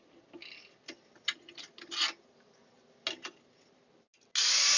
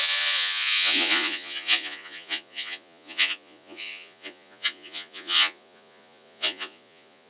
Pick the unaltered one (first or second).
first